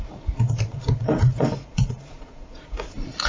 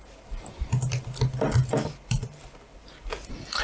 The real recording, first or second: second